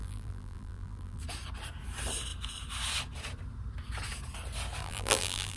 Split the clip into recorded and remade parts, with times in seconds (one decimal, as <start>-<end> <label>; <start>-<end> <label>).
0.0-1.2 remade; 1.2-4.8 recorded; 4.8-5.6 remade